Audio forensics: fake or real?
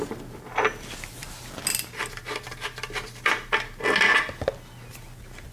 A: real